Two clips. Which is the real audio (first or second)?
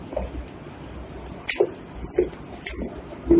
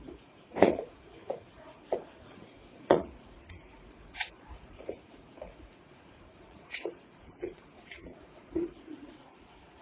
first